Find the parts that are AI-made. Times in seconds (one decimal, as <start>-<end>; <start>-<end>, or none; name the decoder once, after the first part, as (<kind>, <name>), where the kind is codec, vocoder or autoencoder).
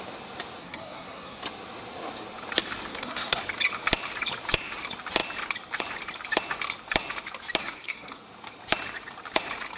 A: 0.6-1.4 (codec, SNAC); 2.9-3.4; 7.6-8.2